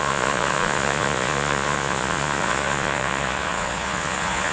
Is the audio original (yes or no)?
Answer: no